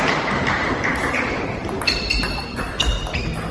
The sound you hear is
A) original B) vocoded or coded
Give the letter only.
B